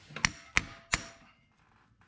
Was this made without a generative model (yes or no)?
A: yes